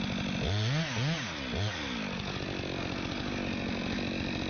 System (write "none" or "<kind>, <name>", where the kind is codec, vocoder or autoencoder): none